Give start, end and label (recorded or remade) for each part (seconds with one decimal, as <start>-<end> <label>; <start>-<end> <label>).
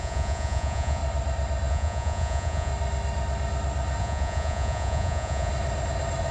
0.0-1.0 remade; 1.0-1.7 recorded; 1.7-2.7 remade; 2.7-4.0 recorded; 4.0-5.5 remade; 5.5-6.3 recorded